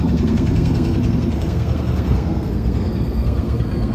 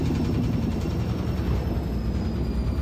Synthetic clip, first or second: first